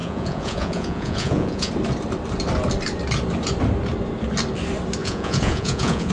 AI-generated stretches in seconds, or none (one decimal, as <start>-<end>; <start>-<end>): 0.0-1.7; 5.0-6.1